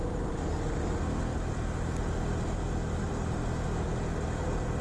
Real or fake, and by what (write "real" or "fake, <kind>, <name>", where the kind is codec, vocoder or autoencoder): real